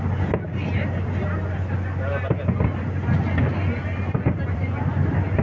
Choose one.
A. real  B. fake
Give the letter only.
A